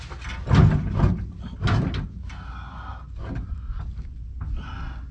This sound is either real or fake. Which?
real